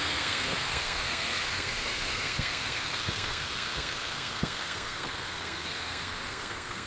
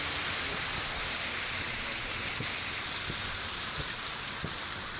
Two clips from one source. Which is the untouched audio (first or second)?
second